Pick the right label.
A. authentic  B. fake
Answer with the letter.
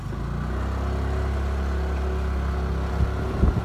A